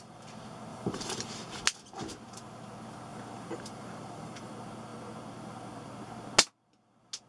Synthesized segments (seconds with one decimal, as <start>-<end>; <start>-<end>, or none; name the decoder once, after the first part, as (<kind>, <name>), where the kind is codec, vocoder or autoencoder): 0.7-1.6 (vocoder, BigVGAN v2); 3.1-4.5